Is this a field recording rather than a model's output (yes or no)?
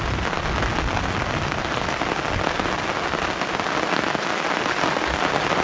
yes